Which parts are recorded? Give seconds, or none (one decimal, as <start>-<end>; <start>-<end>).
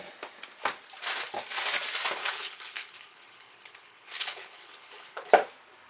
0.0-2.2; 5.3-5.9